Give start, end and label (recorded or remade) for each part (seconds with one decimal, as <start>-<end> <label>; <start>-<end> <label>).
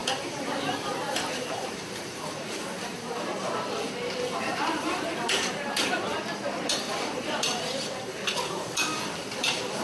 0.0-9.8 remade